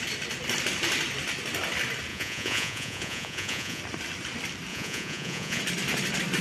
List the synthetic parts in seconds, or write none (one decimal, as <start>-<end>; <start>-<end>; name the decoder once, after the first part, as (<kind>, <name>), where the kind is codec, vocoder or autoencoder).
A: 2.1-3.8 (vocoder, Vocos); 4.7-5.6